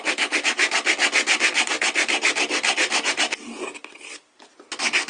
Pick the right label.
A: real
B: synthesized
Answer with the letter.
A